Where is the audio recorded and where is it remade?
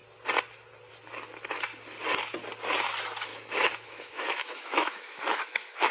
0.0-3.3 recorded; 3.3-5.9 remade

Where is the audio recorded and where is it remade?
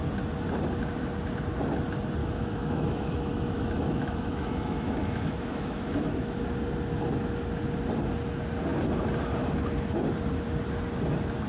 0.0-2.2 recorded; 2.2-6.4 remade; 6.4-11.5 recorded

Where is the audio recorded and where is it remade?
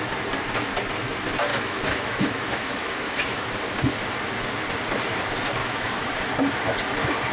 0.0-1.5 recorded; 1.5-3.4 remade; 3.4-5.6 recorded; 5.6-6.3 remade; 6.3-7.3 recorded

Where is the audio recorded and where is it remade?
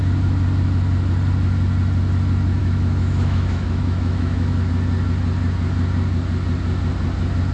0.0-2.6 recorded; 2.6-4.7 remade; 4.7-7.5 recorded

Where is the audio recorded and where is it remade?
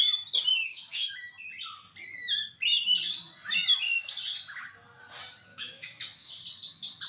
0.0-0.5 recorded; 0.5-1.1 remade; 1.1-5.5 recorded; 5.5-6.3 remade; 6.3-7.1 recorded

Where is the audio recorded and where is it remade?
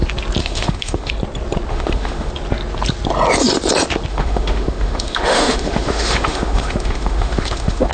0.0-0.4 recorded; 0.4-1.1 remade; 1.1-1.7 recorded; 1.7-2.3 remade; 2.3-4.1 recorded; 4.1-7.9 remade